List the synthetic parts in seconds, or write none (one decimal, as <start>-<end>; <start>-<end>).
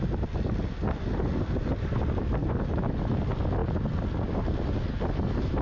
2.4-2.9